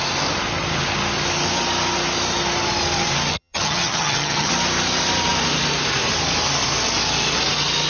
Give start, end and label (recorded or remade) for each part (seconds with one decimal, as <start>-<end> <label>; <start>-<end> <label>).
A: 0.0-3.3 recorded; 3.3-4.5 remade; 4.5-7.9 recorded